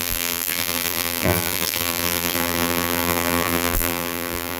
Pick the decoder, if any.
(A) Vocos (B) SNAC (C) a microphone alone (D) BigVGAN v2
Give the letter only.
D